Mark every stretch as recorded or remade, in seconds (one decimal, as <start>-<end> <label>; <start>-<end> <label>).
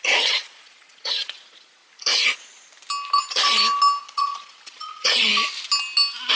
0.0-1.8 remade; 1.8-4.0 recorded; 4.0-5.3 remade; 5.3-6.3 recorded